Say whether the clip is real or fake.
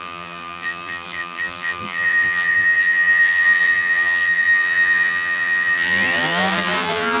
fake